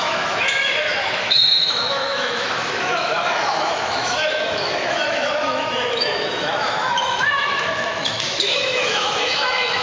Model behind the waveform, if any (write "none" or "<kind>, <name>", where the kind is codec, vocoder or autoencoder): autoencoder, DAC-VAE